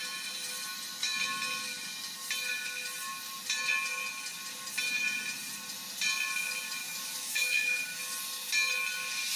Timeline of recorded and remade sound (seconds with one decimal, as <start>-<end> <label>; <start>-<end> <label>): 0.0-6.8 recorded; 6.8-8.0 remade; 8.0-9.4 recorded